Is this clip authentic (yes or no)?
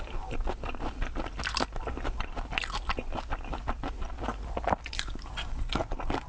yes